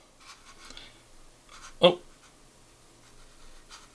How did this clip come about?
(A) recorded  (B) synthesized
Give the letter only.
A